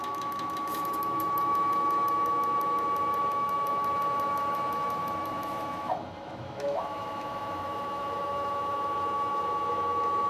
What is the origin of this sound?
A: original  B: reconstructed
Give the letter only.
B